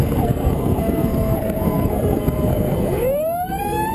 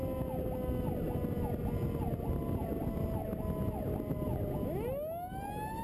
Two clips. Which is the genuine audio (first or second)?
second